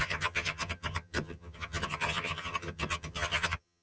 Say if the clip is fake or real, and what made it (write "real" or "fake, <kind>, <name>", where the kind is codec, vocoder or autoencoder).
fake, vocoder, HiFi-GAN